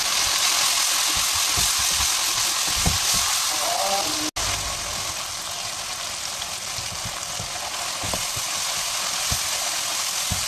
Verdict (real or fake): real